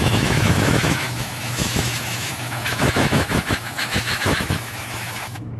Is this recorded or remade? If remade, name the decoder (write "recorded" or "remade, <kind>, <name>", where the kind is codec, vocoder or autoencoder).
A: remade, autoencoder, DAC-VAE